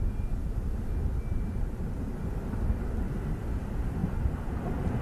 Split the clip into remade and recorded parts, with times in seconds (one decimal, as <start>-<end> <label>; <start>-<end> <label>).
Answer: 0.0-5.0 recorded